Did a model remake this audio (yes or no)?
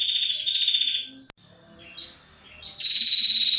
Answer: no